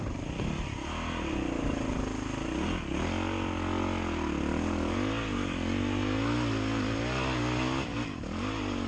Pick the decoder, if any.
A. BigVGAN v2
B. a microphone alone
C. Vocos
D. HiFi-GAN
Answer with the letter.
B